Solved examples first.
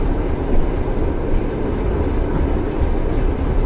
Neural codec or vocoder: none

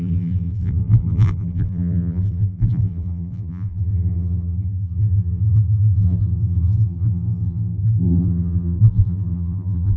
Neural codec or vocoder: vocoder, BigVGAN v2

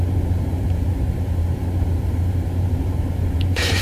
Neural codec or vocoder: vocoder, BigVGAN v2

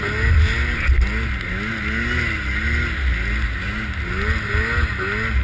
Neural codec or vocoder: none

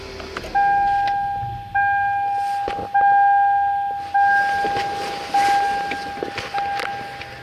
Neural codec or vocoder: none